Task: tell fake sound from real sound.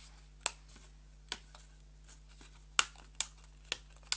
real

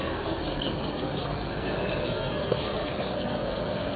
fake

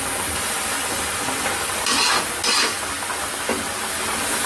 real